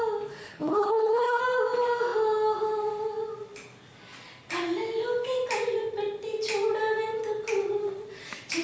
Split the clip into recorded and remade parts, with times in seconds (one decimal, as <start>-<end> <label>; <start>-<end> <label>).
0.0-0.5 recorded; 0.5-1.4 remade; 1.4-8.6 recorded